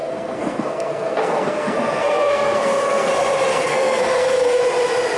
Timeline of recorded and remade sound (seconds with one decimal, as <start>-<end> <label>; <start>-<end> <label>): 0.0-3.1 remade; 3.1-3.5 recorded; 3.5-4.6 remade; 4.6-5.2 recorded